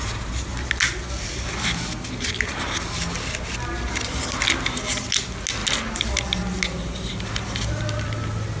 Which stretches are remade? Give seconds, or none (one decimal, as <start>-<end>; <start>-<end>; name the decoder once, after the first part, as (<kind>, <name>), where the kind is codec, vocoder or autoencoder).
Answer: none